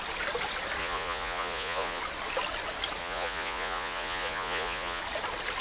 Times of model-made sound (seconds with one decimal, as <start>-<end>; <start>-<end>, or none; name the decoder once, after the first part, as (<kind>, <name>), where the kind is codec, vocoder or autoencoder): 0.8-2.0 (vocoder, Vocos); 3.0-5.0